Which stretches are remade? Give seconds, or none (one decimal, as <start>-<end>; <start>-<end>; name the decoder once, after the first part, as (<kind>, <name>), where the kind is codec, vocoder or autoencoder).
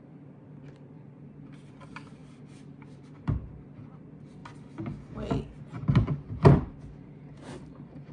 0.0-4.4 (vocoder, BigVGAN v2); 6.8-8.1